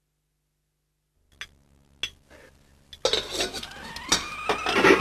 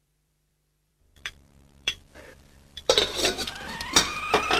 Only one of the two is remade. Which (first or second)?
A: second